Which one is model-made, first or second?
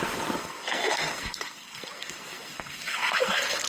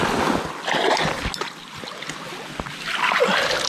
first